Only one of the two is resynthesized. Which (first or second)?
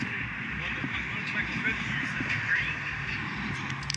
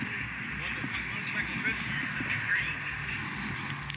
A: first